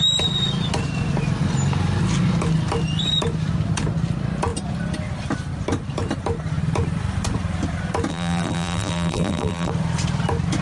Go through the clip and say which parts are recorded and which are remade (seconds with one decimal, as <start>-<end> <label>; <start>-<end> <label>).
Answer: 0.0-8.1 recorded; 8.1-9.7 remade; 9.7-10.6 recorded